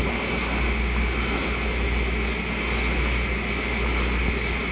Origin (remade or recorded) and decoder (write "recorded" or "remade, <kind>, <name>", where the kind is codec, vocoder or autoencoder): recorded